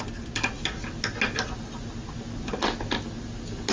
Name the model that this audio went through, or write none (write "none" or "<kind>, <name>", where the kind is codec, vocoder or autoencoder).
none